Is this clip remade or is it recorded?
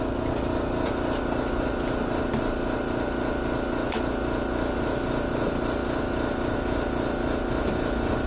recorded